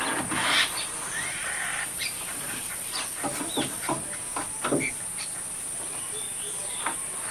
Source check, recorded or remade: recorded